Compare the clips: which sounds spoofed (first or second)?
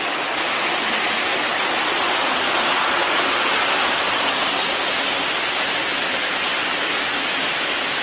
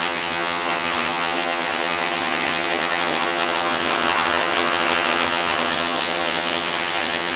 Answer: second